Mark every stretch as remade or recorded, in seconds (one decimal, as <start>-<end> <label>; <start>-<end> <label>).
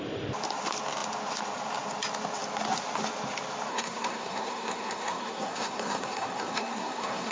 0.0-3.7 recorded; 3.7-7.3 remade